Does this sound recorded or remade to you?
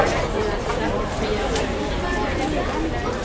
recorded